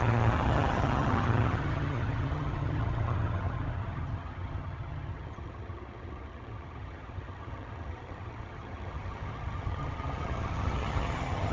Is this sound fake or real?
fake